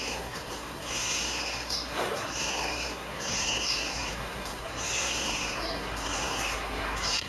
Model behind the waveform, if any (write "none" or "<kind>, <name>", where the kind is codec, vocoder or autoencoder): codec, SNAC